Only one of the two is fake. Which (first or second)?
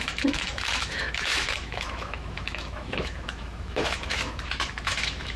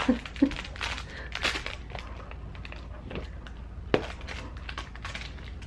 first